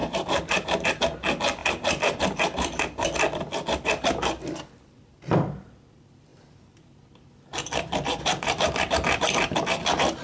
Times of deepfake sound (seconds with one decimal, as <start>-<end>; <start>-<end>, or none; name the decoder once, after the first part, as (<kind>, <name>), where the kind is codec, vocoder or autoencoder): 0.0-10.2 (vocoder, BigVGAN v2)